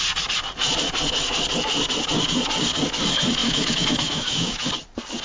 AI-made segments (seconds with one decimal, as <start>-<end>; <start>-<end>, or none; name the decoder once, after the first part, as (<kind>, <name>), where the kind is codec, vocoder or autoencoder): 3.4-4.7 (autoencoder, DAC-VAE)